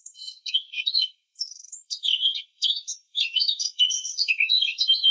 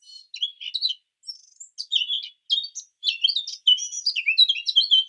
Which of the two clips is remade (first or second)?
first